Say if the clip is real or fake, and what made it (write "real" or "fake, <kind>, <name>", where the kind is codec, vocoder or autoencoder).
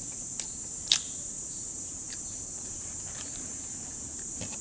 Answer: fake, vocoder, BigVGAN v2